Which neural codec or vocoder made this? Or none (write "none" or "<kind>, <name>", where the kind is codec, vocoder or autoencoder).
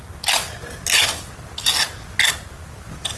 none